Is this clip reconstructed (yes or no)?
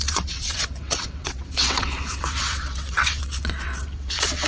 yes